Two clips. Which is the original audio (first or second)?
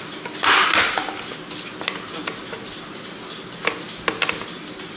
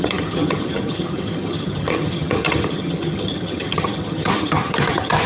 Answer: first